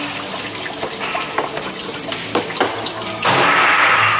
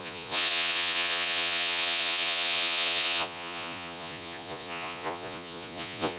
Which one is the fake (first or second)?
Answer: second